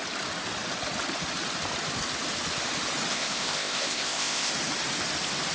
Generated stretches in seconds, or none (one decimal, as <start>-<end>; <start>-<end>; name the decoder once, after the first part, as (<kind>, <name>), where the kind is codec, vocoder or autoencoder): 3.1-4.5 (codec, ZipCodec)